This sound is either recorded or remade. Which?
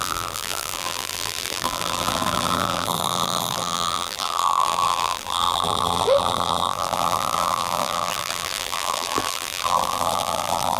remade